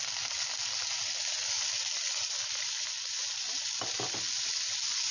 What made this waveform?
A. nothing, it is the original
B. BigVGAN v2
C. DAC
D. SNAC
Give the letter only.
A